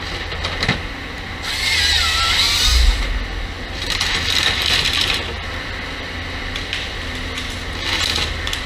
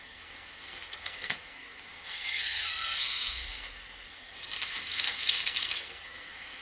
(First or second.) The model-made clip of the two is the second